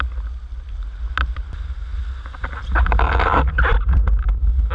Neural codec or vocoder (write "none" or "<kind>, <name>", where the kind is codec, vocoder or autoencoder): none